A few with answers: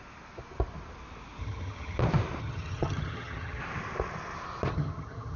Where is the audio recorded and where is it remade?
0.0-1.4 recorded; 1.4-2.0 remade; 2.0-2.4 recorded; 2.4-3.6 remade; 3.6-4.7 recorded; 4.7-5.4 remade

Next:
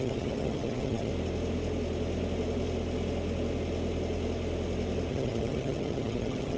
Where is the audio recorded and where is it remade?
0.0-1.1 remade; 1.1-5.1 recorded; 5.1-6.6 remade

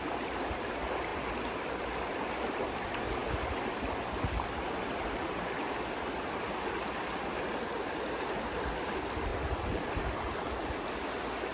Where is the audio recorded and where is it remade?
0.0-11.5 recorded

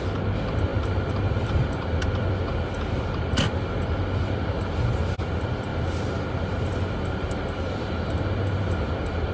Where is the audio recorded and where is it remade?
0.0-9.3 recorded

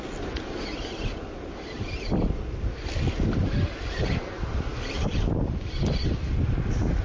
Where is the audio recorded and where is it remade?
0.0-7.0 recorded

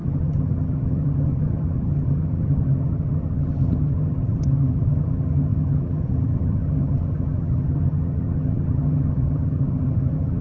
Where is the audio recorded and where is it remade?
0.0-10.4 remade

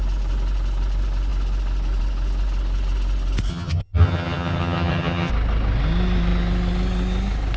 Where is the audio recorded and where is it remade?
0.0-3.5 recorded; 3.5-5.3 remade; 5.3-7.6 recorded

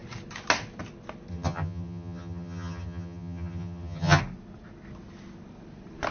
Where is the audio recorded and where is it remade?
0.0-1.3 recorded; 1.3-4.2 remade; 4.2-6.1 recorded